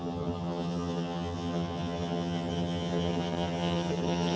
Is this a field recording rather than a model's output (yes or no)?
no